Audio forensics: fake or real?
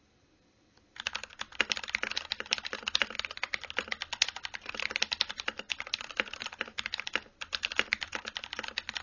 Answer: fake